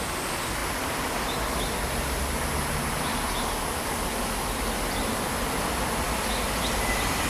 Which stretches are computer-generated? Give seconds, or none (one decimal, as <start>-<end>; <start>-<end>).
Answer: none

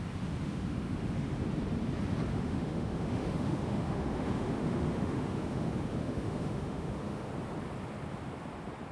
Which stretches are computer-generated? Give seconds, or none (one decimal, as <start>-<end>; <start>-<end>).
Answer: 0.4-1.3; 2.3-7.3

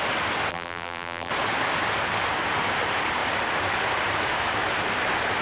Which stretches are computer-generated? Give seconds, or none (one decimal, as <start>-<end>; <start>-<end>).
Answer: 0.5-1.3

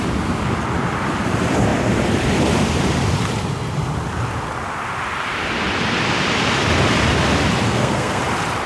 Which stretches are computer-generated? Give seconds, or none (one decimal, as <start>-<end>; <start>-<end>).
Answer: 7.7-8.2

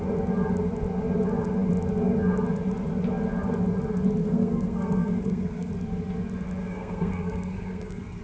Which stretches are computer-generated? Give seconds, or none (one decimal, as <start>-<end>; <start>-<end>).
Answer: 4.2-5.7; 6.6-8.2